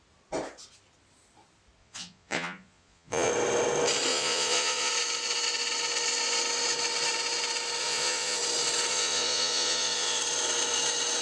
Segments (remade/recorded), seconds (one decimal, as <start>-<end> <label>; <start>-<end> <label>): 0.0-1.8 recorded; 1.8-3.3 remade; 3.3-4.1 recorded; 4.1-4.9 remade; 4.9-7.8 recorded; 7.8-8.4 remade; 8.4-8.9 recorded; 8.9-10.2 remade; 10.2-11.2 recorded